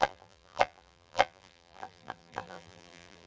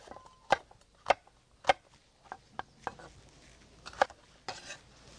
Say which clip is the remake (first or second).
first